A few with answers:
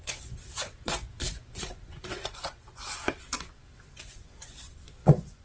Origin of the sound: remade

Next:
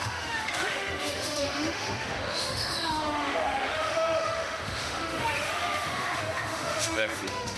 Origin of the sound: remade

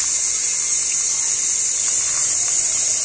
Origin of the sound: recorded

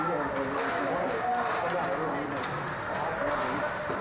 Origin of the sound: recorded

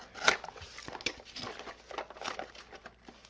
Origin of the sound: recorded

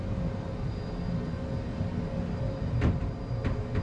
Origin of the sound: recorded